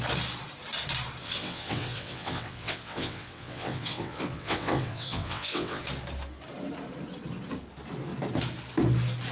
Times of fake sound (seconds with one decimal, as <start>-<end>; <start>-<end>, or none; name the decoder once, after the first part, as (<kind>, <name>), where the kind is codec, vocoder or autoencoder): 1.2-5.8 (vocoder, WaveNeXt)